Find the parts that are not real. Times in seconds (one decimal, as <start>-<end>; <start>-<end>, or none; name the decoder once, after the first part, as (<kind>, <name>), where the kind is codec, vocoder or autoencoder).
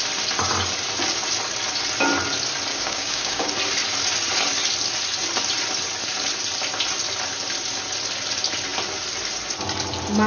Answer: 2.7-3.5 (codec, DAC)